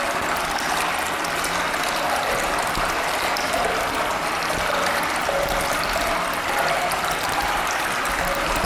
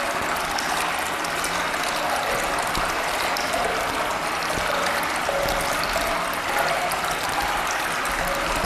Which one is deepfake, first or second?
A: first